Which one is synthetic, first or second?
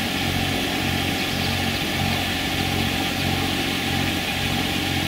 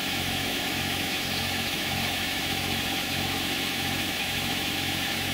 second